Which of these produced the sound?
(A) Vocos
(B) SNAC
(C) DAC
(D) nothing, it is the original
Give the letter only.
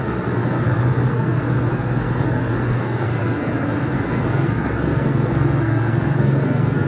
B